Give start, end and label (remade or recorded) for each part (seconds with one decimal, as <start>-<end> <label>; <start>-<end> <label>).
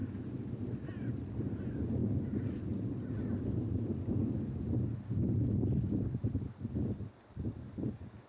0.0-1.3 remade; 1.3-8.3 recorded